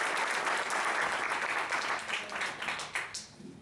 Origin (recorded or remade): recorded